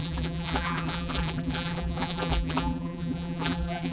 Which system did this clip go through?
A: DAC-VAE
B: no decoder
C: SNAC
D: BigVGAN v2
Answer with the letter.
D